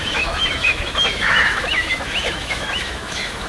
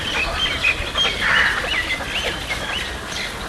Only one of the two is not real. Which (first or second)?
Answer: first